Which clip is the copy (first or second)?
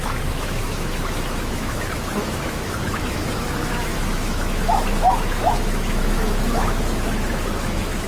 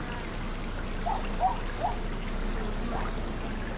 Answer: first